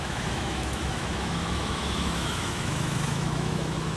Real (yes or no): no